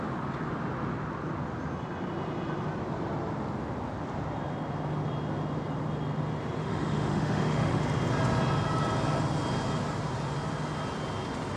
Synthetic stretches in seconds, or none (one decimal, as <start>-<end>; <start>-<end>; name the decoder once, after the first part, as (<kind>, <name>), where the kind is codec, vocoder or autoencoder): 6.6-7.8 (autoencoder, DAC-VAE)